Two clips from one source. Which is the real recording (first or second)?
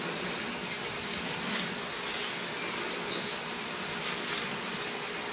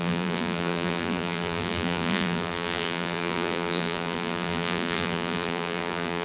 first